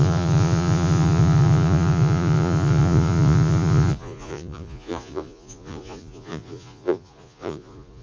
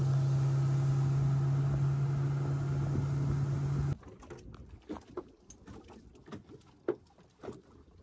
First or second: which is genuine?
second